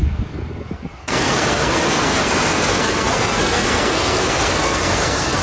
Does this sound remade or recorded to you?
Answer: remade